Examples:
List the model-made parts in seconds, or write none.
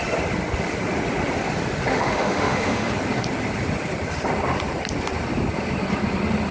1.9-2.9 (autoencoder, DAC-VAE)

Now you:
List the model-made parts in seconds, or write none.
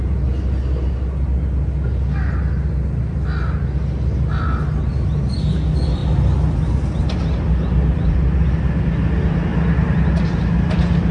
none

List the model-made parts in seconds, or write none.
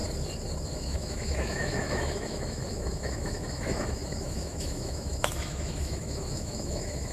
0.7-7.1 (autoencoder, DAC-VAE)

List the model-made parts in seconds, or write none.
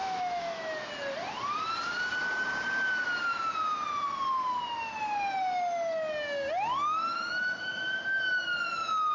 0.0-0.9 (autoencoder, DAC-VAE); 7.1-8.2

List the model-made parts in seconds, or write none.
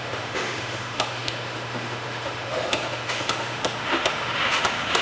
0.0-5.0 (autoencoder, DAC-VAE)